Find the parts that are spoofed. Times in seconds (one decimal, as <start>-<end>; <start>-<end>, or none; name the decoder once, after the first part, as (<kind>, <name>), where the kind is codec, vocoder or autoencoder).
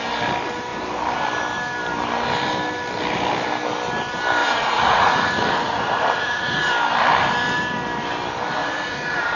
4.4-6.7 (vocoder, Vocos); 8.6-9.4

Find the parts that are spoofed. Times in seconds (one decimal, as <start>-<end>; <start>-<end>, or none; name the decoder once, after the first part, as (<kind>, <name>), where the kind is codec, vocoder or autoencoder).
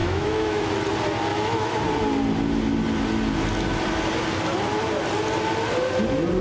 0.0-0.7 (autoencoder, DAC-VAE); 1.3-1.8